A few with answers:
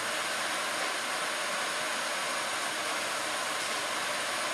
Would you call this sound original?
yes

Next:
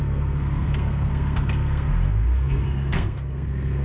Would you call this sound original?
no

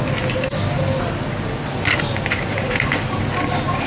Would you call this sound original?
yes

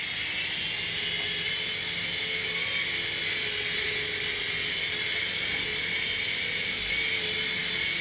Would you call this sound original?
yes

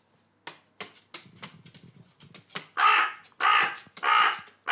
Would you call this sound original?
yes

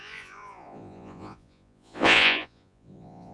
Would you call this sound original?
no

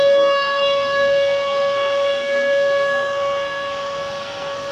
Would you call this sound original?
no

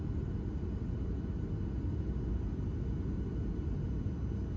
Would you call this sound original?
yes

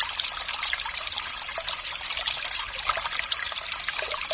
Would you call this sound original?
yes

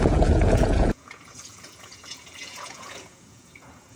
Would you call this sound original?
no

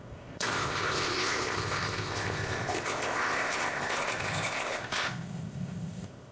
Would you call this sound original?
no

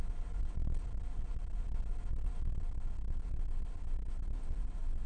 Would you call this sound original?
yes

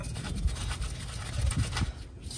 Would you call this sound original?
yes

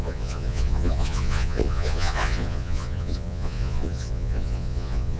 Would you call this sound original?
no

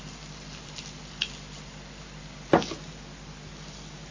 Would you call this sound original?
yes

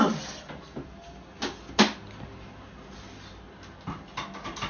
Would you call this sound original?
yes